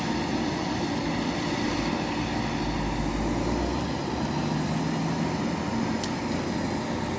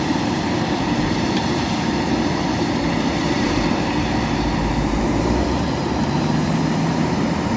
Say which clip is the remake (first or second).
second